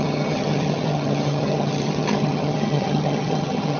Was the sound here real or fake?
fake